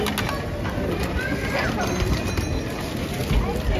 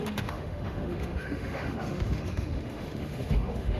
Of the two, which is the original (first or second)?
first